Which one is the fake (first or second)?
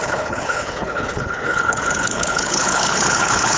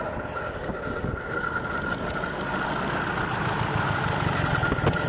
first